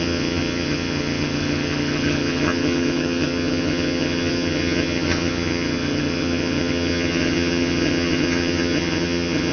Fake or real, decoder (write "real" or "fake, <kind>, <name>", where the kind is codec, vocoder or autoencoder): fake, vocoder, HiFi-GAN